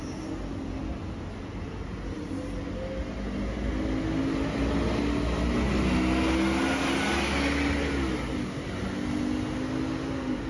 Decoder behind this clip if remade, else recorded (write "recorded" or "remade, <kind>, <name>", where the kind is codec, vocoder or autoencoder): recorded